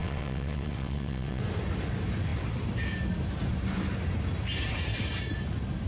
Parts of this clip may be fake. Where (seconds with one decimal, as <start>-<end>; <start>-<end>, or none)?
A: 0.0-1.4